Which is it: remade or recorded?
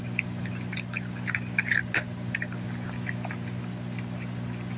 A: recorded